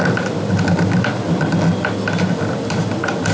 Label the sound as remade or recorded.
recorded